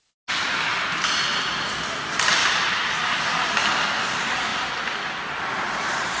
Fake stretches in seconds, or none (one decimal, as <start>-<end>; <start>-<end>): 0.7-1.7; 2.4-3.2; 4.5-5.4